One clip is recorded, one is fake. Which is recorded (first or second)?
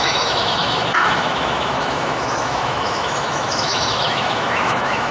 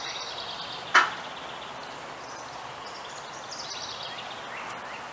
second